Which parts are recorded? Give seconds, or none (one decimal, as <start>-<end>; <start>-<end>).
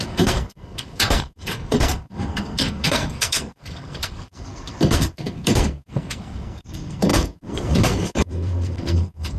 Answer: none